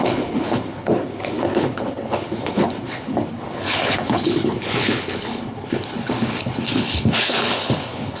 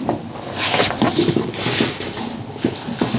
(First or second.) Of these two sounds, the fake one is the first